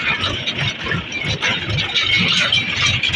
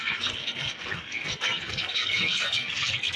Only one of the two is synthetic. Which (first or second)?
second